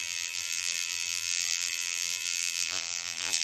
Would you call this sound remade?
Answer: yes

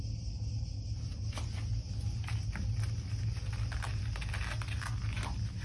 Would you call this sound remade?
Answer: no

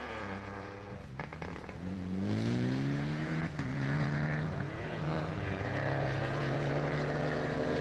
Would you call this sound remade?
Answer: yes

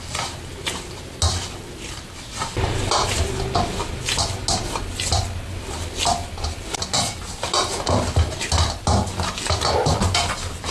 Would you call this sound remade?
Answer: no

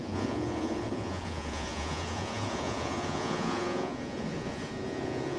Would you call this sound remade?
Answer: yes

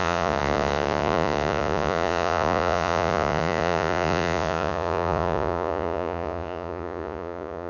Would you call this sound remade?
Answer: yes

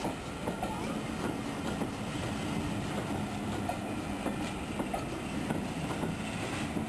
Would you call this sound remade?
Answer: no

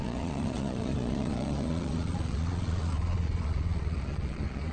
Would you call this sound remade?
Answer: yes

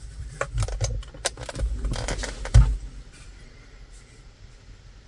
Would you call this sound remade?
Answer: no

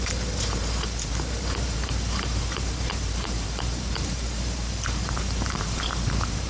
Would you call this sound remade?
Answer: yes